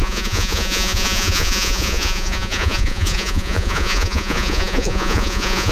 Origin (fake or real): fake